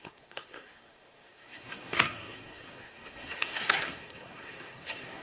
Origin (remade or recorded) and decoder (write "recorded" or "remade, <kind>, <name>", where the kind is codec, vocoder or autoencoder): remade, codec, SNAC